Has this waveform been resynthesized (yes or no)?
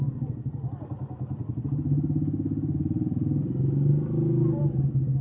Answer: no